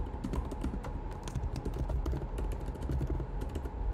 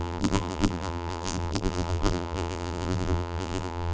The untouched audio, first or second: first